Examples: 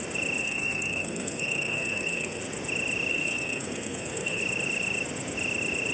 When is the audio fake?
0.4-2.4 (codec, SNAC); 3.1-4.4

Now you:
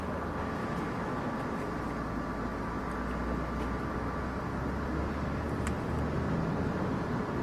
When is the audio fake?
0.6-1.2 (autoencoder, DAC-VAE)

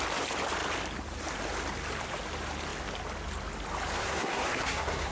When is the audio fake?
4.0-5.1 (codec, SNAC)

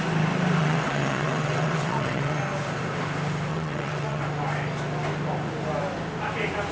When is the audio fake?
0.6-2.4 (vocoder, WaveNeXt); 3.5-4.2

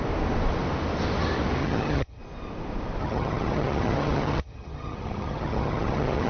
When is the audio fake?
1.6-2.2 (vocoder, HiFi-GAN); 3.0-6.3